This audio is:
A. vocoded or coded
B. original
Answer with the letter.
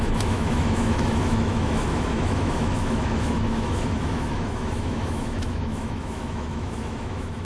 A